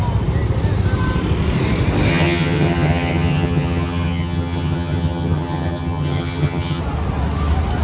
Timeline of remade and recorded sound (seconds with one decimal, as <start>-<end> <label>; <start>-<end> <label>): 0.0-2.1 recorded; 2.1-6.8 remade; 6.8-7.8 recorded